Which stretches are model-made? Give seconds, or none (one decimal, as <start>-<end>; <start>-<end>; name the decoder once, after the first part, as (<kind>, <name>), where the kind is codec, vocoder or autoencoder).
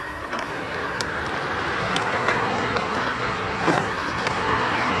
0.0-1.2 (codec, SNAC); 1.8-5.0